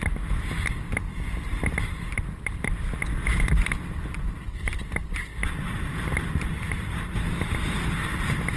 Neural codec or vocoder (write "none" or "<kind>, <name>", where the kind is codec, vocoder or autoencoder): none